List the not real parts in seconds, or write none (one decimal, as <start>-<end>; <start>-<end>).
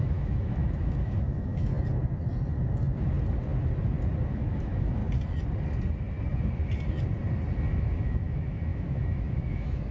0.0-1.7; 4.3-5.0; 7.7-9.9